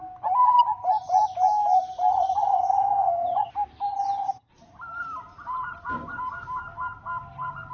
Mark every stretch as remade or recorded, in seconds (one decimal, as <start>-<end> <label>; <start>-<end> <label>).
0.0-2.1 recorded; 2.1-3.5 remade; 3.5-3.9 recorded; 3.9-4.5 remade; 4.5-7.7 recorded